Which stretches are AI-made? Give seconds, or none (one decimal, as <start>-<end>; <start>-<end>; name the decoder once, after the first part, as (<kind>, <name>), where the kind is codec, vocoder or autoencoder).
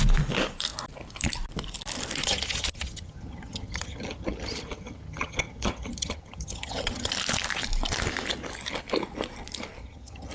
2.2-7.1 (vocoder, HiFi-GAN); 9.8-10.3